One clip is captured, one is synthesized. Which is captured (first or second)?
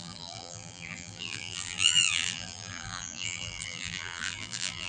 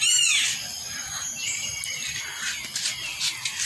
second